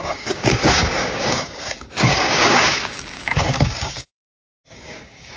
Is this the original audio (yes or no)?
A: no